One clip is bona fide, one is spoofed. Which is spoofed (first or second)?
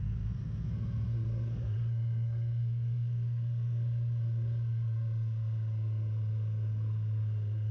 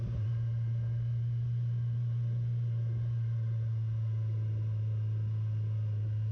first